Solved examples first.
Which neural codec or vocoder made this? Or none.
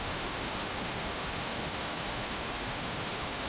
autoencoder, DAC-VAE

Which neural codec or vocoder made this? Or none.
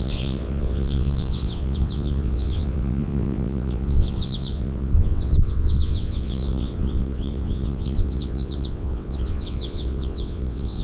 vocoder, WaveNeXt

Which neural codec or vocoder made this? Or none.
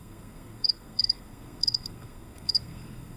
codec, SNAC